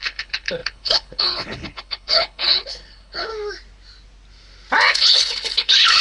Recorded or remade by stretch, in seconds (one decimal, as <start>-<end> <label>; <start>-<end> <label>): 0.0-3.3 remade; 3.3-4.9 recorded; 4.9-6.0 remade